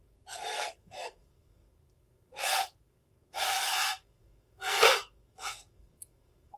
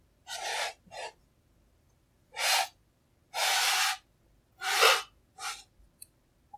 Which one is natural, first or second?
second